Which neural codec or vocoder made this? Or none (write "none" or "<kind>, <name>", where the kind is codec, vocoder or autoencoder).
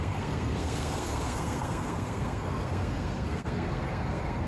codec, SNAC